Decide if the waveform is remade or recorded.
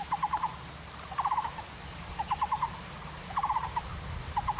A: recorded